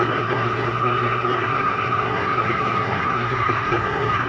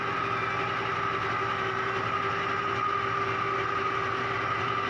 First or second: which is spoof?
first